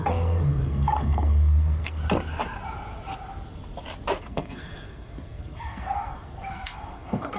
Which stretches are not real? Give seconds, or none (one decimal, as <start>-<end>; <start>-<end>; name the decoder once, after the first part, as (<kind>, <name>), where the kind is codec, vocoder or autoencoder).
0.0-2.0 (codec, SNAC); 4.2-7.4